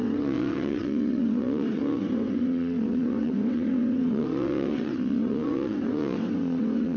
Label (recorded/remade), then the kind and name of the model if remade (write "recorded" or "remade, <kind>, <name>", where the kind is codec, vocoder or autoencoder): remade, vocoder, WaveNeXt